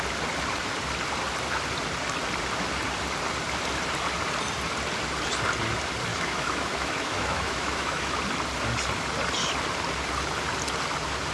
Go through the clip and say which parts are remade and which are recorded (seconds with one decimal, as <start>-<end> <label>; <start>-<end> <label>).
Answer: 0.0-6.1 recorded; 6.1-8.2 remade; 8.2-11.3 recorded